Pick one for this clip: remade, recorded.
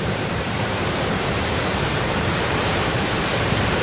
remade